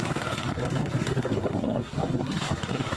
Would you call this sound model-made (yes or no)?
yes